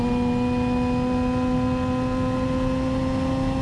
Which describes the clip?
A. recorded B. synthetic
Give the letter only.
A